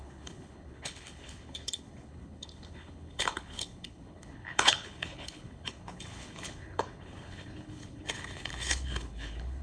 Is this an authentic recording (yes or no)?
no